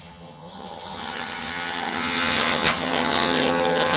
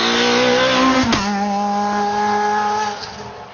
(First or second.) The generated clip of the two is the first